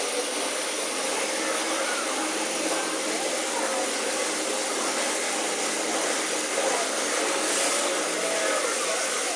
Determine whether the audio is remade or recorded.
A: recorded